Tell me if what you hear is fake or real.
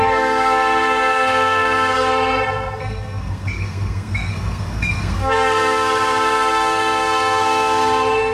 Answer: fake